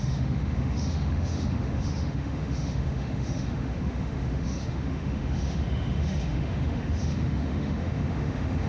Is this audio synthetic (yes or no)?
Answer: yes